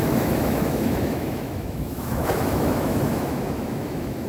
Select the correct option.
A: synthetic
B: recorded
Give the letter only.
A